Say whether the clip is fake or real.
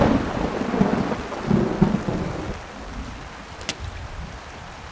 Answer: real